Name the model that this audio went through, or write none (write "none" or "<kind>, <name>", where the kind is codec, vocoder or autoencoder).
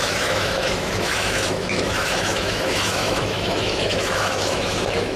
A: autoencoder, DAC-VAE